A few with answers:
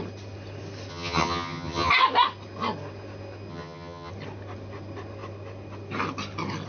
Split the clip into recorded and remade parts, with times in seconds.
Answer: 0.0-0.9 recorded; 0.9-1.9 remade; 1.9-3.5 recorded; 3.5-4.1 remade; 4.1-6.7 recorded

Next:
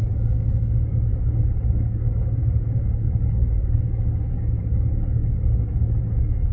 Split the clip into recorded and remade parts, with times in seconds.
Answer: 0.0-6.5 remade

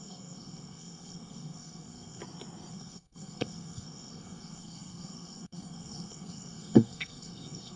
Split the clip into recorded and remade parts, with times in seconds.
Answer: 0.0-2.2 remade; 2.2-2.7 recorded; 2.7-7.8 remade

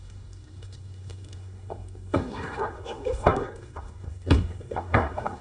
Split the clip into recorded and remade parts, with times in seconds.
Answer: 0.0-5.4 remade